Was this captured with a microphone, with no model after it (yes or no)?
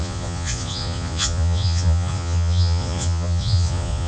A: no